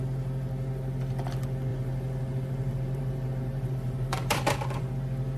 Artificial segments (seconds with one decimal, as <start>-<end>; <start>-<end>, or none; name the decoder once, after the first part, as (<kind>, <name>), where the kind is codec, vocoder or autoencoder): 1.7-4.9 (vocoder, BigVGAN v2)